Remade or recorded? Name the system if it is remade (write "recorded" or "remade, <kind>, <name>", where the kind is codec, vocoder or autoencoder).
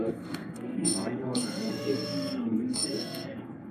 remade, codec, SNAC